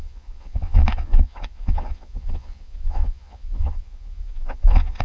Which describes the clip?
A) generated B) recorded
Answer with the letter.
A